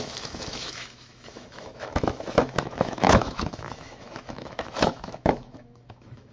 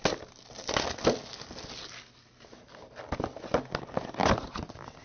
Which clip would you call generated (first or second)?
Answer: first